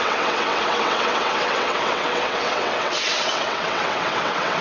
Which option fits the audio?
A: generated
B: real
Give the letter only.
A